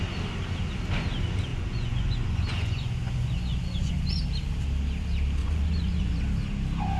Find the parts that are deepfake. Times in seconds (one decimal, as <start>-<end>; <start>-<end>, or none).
1.5-4.2; 5.4-6.2

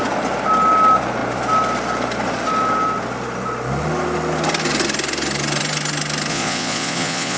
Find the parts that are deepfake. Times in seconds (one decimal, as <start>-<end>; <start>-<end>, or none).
6.3-7.4

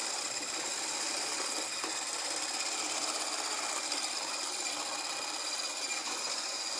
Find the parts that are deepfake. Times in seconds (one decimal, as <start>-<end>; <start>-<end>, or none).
6.0-6.8